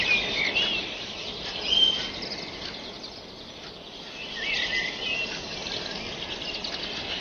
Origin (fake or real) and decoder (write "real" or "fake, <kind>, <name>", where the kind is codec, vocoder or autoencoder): real